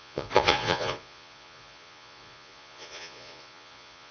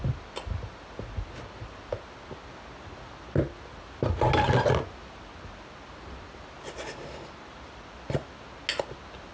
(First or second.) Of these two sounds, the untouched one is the second